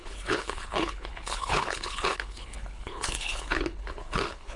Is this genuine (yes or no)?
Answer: no